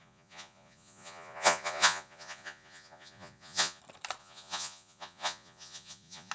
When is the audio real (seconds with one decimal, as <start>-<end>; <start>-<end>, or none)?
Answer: 3.8-4.2